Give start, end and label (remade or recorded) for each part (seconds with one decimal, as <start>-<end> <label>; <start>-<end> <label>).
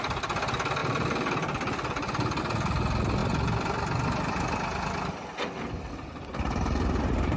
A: 0.0-7.4 recorded